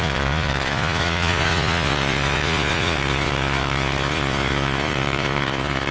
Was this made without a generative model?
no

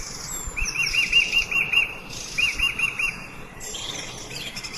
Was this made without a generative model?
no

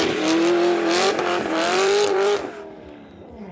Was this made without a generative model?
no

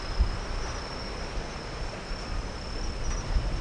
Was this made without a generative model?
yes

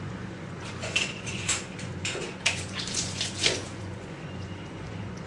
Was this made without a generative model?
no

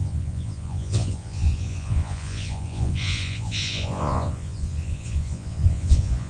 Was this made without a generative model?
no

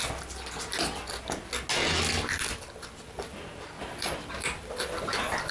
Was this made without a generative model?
yes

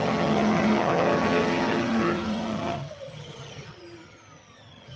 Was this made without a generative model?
no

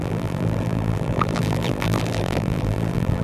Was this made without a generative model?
no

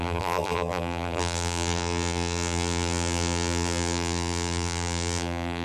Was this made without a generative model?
no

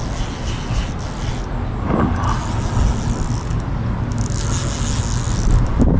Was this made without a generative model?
yes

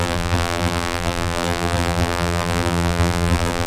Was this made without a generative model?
no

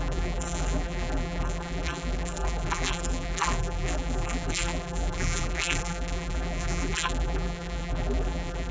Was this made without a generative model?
no